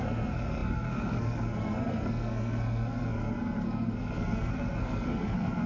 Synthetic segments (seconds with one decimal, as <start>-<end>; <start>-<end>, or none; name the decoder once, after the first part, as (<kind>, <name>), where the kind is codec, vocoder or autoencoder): 0.0-5.7 (codec, SNAC)